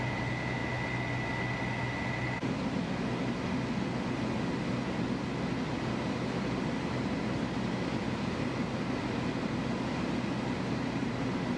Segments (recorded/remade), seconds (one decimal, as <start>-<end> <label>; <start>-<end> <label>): 0.0-11.6 recorded